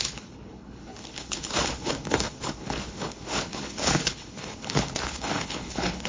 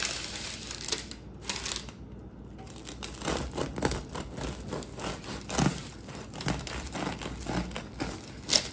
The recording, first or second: second